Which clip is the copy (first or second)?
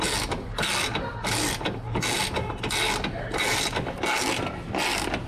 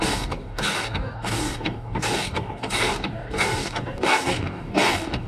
second